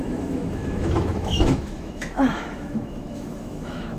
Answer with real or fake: fake